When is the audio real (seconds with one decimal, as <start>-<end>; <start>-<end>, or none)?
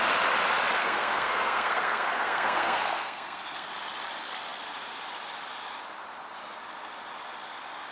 0.0-0.8; 3.7-7.9